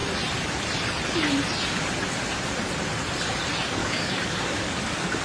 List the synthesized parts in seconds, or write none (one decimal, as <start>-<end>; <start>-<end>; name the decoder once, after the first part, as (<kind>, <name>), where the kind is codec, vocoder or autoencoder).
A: 3.8-5.2 (codec, DAC)